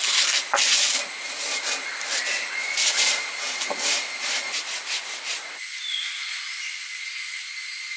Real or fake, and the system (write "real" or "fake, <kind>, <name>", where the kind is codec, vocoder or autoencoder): real